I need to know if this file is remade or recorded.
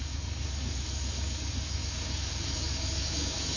remade